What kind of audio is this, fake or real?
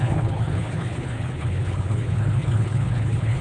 fake